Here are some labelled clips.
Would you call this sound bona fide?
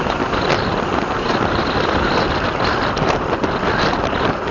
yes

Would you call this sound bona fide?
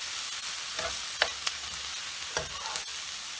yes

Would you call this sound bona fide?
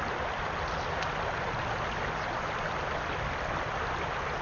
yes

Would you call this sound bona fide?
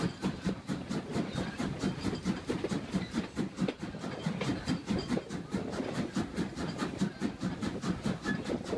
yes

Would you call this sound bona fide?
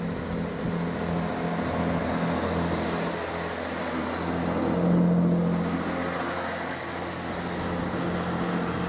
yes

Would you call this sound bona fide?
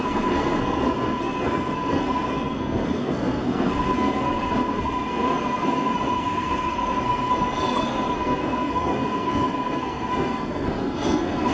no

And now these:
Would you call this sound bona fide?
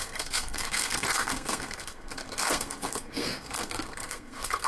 no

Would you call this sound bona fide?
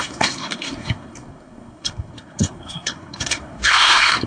no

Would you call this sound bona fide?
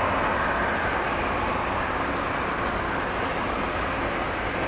yes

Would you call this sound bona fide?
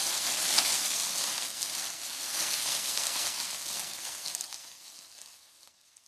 no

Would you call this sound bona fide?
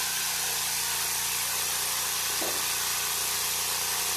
yes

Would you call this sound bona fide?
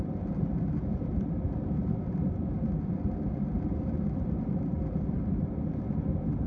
yes